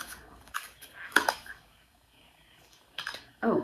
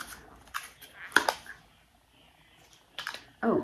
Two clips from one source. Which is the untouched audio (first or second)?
second